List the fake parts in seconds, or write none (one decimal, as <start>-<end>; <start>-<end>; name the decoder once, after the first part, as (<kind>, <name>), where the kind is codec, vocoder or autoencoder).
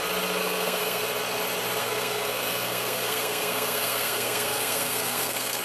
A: 0.4-1.0 (codec, SNAC); 1.8-5.6